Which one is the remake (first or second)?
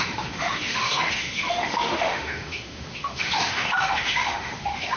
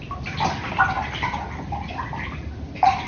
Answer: first